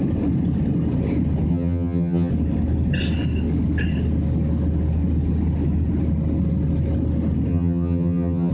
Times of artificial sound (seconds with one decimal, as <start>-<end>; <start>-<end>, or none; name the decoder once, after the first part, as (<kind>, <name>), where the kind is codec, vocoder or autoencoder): 1.5-2.3 (vocoder, HiFi-GAN); 7.5-8.5